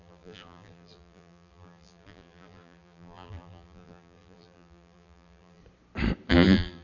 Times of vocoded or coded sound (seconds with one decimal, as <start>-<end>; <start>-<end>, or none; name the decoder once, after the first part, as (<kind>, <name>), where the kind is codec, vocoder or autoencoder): 0.0-5.6 (vocoder, BigVGAN v2); 6.3-6.8